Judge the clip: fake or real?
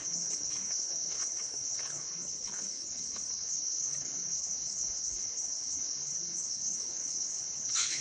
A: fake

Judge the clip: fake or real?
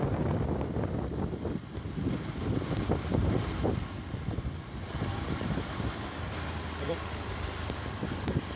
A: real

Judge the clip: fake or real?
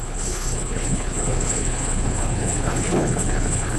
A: fake